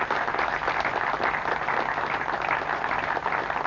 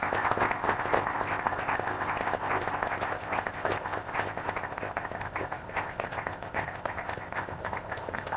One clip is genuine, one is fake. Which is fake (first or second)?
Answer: second